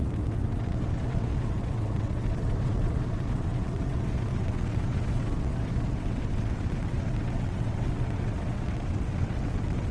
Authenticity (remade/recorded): remade